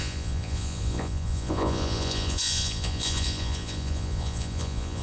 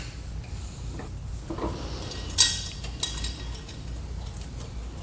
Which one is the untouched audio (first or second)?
second